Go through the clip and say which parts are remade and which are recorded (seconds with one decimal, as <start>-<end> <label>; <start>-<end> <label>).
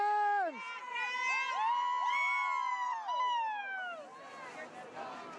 0.0-5.4 recorded